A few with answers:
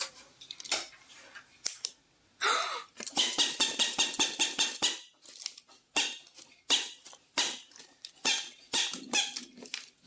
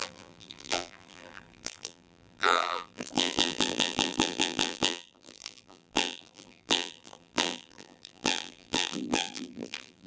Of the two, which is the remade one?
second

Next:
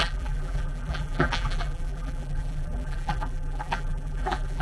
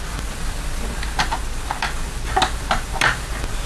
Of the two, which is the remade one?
first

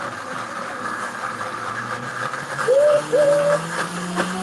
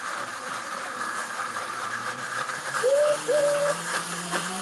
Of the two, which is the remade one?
second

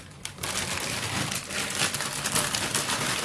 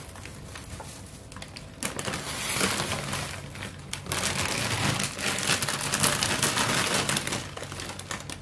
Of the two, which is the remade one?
first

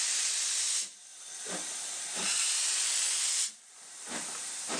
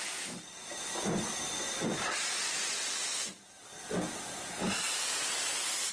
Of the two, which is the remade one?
first